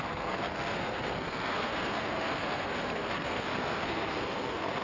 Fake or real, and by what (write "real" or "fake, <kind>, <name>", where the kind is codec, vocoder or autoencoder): fake, codec, SNAC